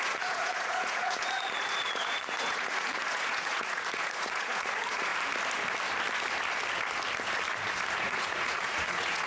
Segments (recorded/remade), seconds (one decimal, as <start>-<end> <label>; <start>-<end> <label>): 0.0-5.1 remade; 5.1-8.0 recorded; 8.0-9.3 remade

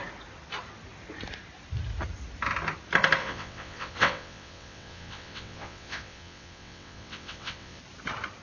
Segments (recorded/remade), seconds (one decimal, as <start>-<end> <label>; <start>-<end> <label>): 0.0-3.2 recorded; 3.2-7.8 remade; 7.8-8.4 recorded

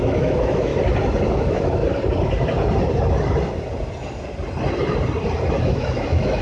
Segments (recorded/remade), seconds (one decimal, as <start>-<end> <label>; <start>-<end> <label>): 0.0-0.7 remade; 0.7-1.3 recorded; 1.3-1.8 remade; 1.8-5.6 recorded; 5.6-6.4 remade

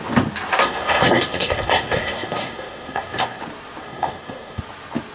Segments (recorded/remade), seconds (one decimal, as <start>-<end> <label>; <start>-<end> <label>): 0.0-0.6 recorded; 0.6-3.4 remade; 3.4-3.8 recorded; 3.8-4.6 remade; 4.6-5.1 recorded

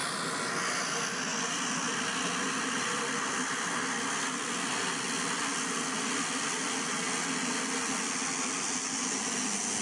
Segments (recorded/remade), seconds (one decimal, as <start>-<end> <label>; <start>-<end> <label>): 0.0-9.8 recorded

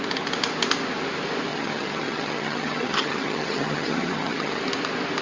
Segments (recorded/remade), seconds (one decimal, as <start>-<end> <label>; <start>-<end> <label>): 0.0-1.5 recorded; 1.5-4.6 remade; 4.6-5.2 recorded

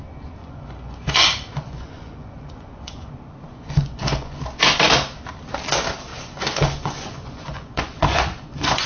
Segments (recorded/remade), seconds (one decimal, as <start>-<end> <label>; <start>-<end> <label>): 0.0-0.4 recorded; 0.4-3.1 remade; 3.1-3.5 recorded; 3.5-4.4 remade; 4.4-6.1 recorded; 6.1-8.9 remade

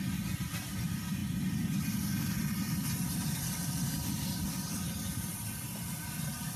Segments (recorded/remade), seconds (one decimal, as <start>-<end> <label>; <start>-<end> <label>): 0.0-6.6 remade